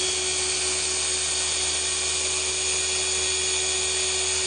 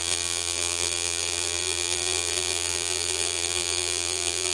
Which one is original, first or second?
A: first